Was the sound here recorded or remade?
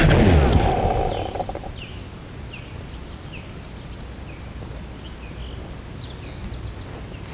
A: recorded